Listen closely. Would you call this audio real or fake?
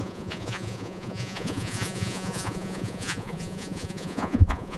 fake